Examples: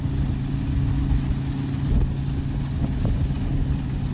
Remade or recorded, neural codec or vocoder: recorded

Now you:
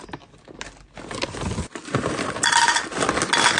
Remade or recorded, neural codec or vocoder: recorded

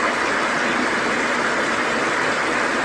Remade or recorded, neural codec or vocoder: recorded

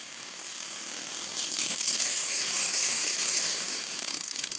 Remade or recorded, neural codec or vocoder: remade, codec, DAC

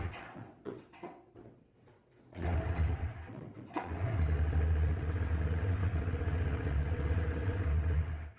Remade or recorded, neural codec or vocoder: remade, vocoder, WaveNeXt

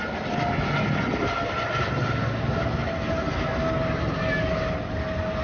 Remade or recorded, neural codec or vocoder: recorded